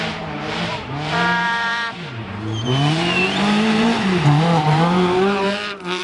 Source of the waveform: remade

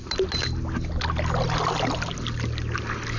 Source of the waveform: recorded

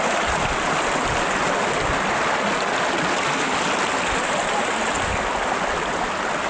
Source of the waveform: recorded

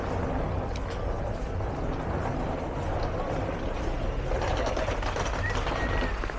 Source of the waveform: recorded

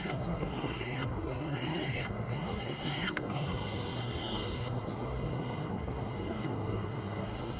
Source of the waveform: remade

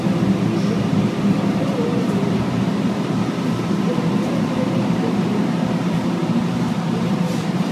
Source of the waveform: remade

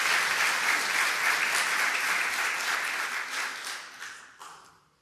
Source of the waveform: recorded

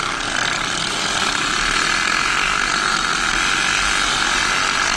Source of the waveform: recorded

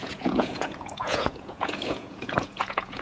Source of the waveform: remade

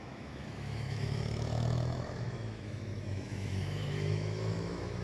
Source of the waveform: remade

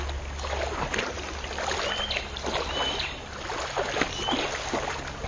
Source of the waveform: recorded